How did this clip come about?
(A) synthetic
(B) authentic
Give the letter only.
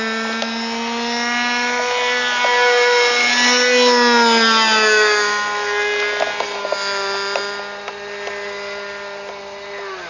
B